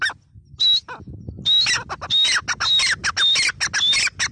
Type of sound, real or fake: real